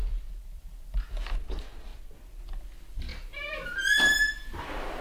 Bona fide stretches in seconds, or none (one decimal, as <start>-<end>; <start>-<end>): 1.0-1.9; 2.4-3.1; 4.6-5.0